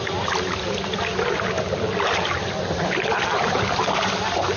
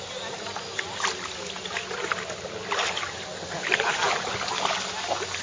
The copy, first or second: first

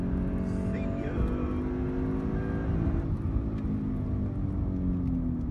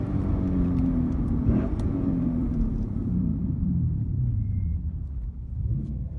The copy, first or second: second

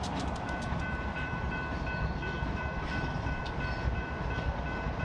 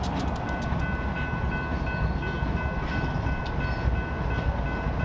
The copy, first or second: first